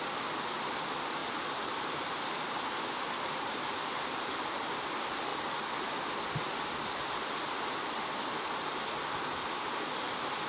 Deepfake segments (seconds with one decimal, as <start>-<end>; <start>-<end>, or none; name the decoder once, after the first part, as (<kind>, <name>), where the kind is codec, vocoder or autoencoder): 1.2-4.0 (vocoder, BigVGAN v2)